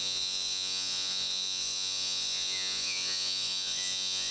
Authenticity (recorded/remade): remade